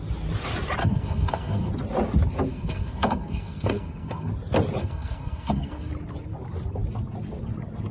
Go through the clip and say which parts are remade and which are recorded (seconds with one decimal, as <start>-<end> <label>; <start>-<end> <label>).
0.0-0.8 recorded; 0.8-1.7 remade; 1.7-2.5 recorded; 2.5-4.3 remade; 4.3-4.8 recorded; 4.8-5.9 remade; 5.9-7.9 recorded